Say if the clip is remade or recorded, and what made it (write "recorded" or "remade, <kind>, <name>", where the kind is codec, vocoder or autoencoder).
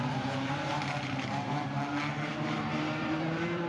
remade, vocoder, BigVGAN v2